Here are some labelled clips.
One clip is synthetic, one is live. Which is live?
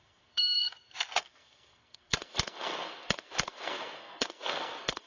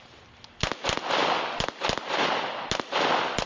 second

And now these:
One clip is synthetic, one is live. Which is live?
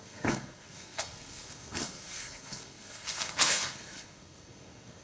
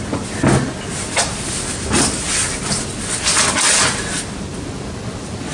second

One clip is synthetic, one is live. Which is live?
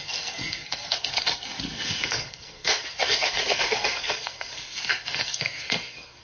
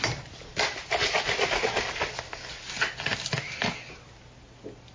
second